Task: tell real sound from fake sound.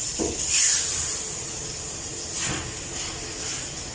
real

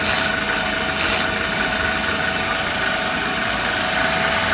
real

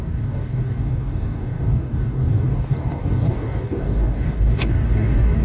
fake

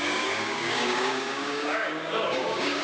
fake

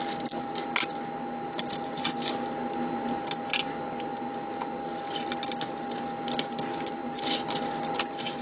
real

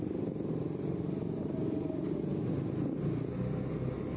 real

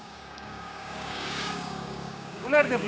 fake